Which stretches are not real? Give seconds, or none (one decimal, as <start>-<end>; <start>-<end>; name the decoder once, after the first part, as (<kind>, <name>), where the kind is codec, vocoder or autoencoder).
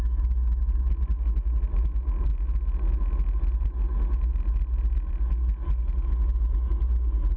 none